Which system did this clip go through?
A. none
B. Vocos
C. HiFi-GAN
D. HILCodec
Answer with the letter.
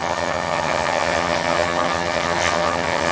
C